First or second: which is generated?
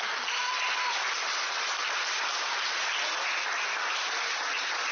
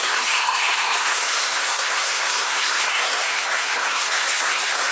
second